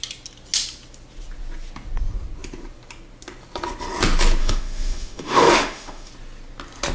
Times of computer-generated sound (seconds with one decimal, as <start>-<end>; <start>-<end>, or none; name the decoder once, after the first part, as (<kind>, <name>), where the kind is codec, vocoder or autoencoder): 4.4-6.1 (autoencoder, DAC-VAE)